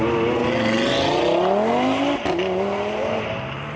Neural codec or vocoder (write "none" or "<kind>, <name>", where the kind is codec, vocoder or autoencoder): none